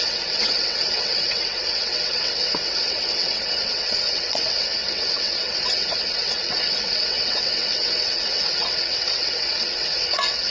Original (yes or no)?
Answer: no